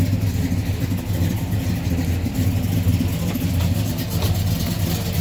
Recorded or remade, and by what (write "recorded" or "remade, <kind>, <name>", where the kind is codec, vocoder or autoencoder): recorded